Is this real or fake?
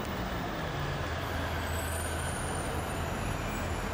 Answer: real